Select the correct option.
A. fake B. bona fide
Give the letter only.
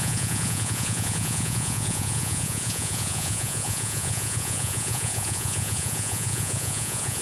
A